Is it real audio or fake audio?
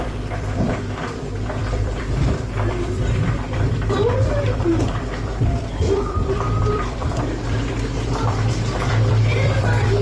fake